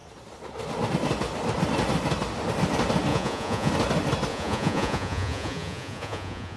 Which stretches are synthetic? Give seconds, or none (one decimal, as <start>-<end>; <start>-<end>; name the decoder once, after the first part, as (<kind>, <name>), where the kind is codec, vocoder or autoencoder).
3.1-3.7 (vocoder, Vocos); 4.3-6.6